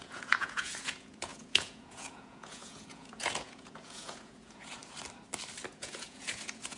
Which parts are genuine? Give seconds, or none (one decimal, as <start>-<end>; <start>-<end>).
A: 4.8-5.7